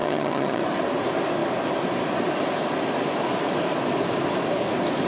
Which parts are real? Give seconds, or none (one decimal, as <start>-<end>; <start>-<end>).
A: 0.6-5.1